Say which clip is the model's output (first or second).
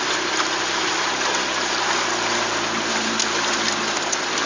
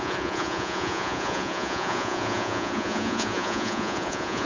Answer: second